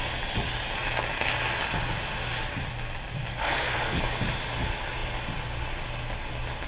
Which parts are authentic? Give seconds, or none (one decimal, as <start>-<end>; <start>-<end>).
0.0-3.3; 4.0-6.7